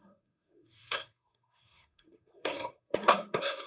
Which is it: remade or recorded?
remade